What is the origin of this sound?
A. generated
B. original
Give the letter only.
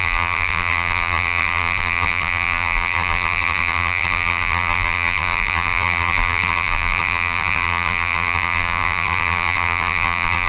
A